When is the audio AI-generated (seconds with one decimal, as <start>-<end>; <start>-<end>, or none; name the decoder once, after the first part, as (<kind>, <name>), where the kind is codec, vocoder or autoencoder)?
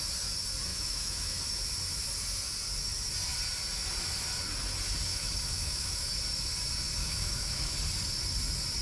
0.7-1.4 (autoencoder, DAC-VAE); 5.1-6.2; 7.0-7.7